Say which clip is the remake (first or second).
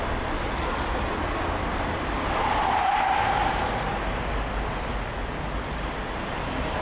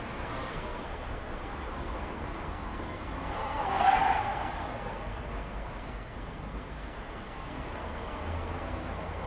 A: second